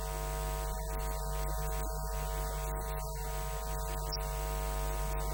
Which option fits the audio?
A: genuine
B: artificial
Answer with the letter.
A